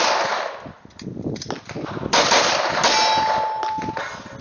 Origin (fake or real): real